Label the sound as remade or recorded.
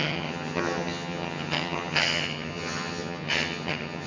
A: remade